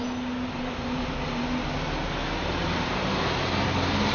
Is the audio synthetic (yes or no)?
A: no